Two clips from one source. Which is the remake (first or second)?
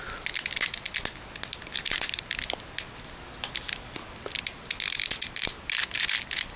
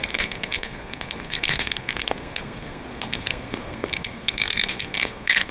second